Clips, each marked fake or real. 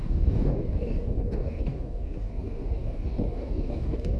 fake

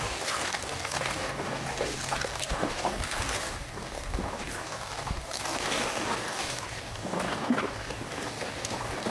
fake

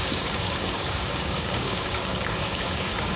fake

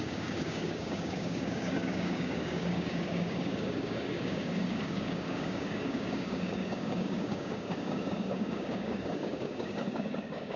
fake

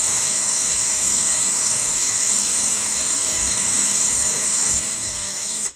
fake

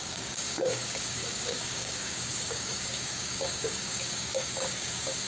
fake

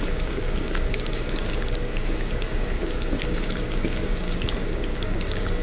fake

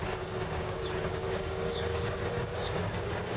fake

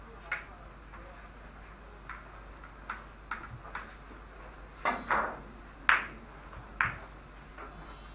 real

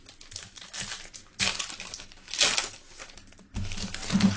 real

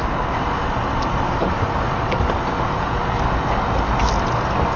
real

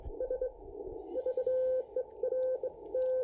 real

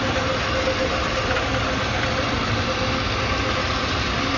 real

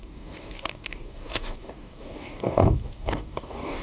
fake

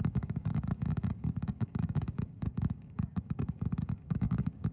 fake